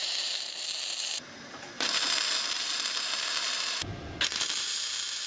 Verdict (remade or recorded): remade